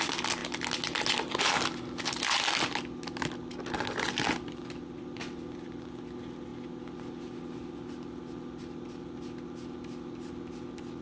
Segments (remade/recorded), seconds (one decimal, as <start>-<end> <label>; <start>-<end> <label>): 0.0-11.0 recorded